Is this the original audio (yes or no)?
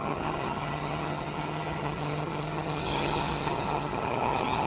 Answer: no